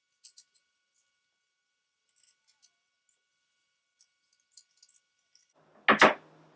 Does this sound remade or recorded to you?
recorded